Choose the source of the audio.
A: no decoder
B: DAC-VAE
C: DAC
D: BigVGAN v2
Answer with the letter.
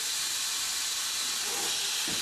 A